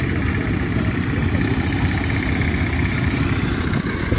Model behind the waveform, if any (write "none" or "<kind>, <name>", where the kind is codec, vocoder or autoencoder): none